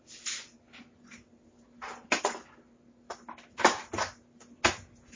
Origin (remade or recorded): recorded